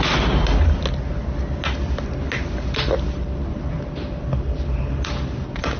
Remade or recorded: recorded